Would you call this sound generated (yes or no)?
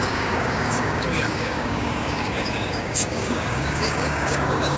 yes